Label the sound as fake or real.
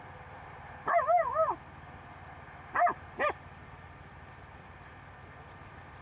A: real